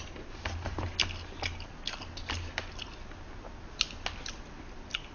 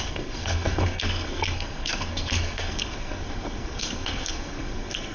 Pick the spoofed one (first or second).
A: second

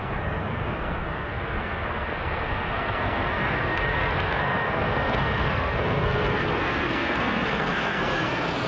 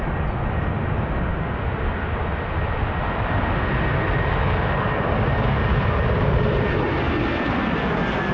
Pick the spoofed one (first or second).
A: first